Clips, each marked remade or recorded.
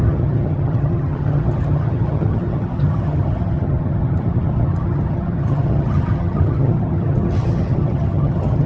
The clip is remade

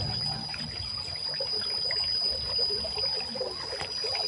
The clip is recorded